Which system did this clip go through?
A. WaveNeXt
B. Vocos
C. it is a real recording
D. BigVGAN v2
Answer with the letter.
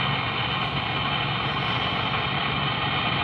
C